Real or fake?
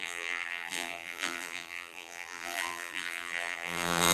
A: fake